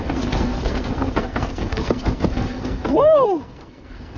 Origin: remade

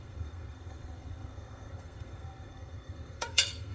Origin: remade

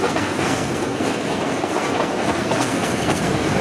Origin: remade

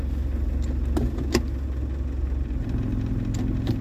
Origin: recorded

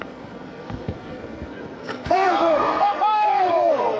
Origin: remade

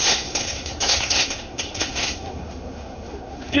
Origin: remade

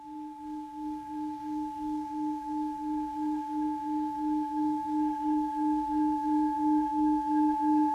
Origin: remade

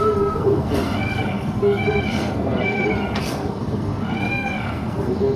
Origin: remade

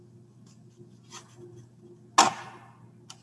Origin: recorded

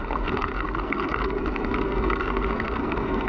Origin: remade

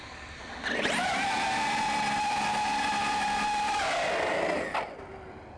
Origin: recorded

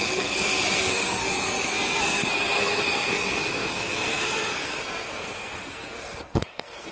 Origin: remade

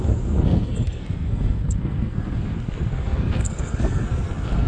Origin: remade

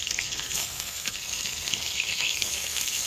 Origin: remade